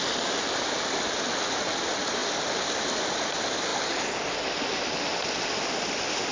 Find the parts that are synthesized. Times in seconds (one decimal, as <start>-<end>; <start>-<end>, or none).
none